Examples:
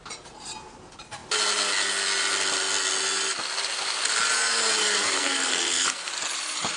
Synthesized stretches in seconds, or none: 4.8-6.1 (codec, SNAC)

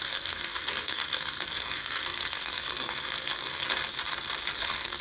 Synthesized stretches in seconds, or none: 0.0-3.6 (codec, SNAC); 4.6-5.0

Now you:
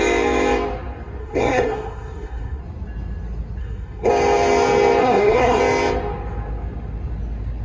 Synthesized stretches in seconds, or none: 1.2-2.6 (codec, SNAC); 3.6-4.1; 5.0-5.6

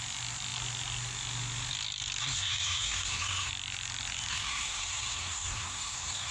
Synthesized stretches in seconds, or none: 2.2-3.5 (codec, SNAC); 4.3-6.3